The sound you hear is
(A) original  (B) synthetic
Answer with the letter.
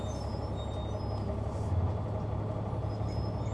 A